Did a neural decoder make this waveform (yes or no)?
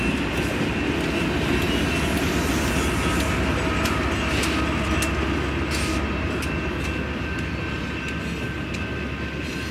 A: no